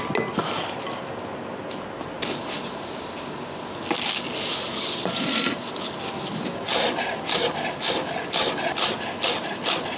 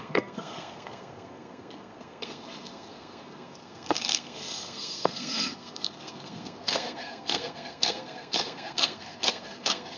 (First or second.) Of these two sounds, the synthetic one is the second